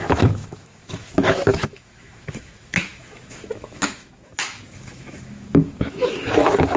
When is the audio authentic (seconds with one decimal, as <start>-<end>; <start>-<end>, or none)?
none